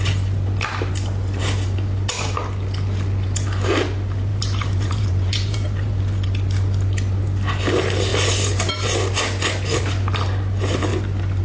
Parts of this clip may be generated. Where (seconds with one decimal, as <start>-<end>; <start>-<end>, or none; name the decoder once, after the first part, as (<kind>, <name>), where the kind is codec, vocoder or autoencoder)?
4.3-6.0 (vocoder, BigVGAN v2)